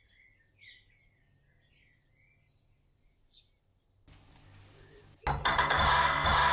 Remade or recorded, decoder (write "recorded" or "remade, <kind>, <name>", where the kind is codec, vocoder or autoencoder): recorded